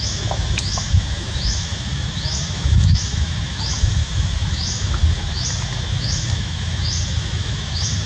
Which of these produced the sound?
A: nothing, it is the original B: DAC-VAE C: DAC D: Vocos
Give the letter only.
B